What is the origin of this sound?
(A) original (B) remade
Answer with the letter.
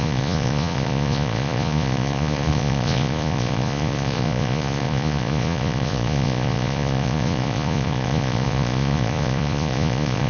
B